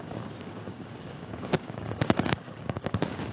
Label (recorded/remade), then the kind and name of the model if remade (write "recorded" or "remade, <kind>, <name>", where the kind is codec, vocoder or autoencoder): remade, codec, DAC